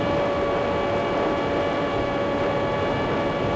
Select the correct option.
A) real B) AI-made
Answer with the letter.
A